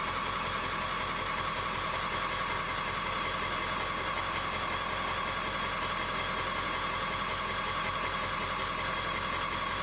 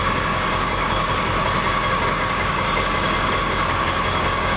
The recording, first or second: first